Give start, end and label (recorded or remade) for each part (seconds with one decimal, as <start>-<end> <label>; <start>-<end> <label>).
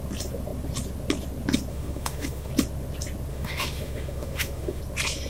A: 0.0-1.7 recorded; 1.7-2.5 remade; 2.5-3.3 recorded; 3.3-4.8 remade; 4.8-5.3 recorded